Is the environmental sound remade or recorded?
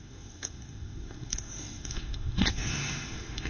remade